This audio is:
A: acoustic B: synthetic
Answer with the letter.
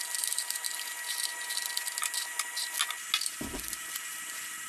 A